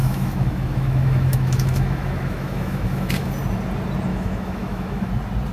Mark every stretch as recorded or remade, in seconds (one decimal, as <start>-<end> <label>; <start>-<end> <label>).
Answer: 0.0-3.3 remade; 3.3-4.1 recorded; 4.1-5.1 remade; 5.1-5.5 recorded